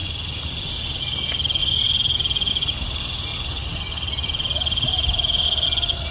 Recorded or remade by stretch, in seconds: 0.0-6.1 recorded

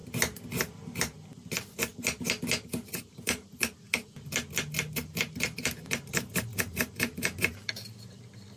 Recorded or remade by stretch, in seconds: 0.0-6.5 recorded; 6.5-7.7 remade; 7.7-8.6 recorded

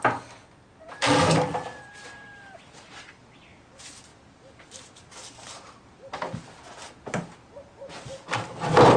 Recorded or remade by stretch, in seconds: 0.0-9.0 recorded